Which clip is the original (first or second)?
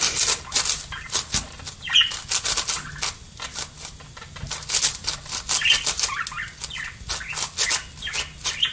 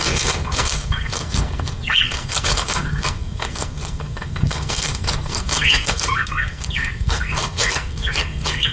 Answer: first